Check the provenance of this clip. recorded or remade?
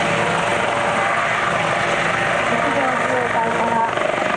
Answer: recorded